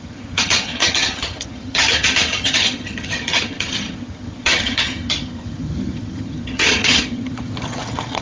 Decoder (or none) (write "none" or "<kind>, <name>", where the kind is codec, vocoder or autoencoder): vocoder, HiFi-GAN